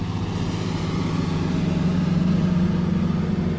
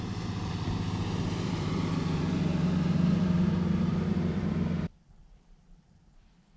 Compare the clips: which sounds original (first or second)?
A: first